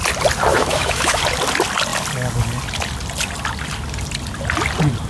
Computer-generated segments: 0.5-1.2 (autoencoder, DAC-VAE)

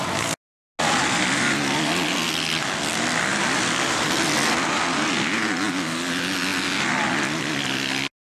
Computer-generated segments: none